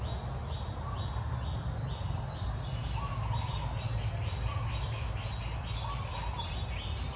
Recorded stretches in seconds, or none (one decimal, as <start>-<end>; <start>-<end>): 0.0-7.2